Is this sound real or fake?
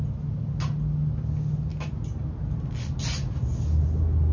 real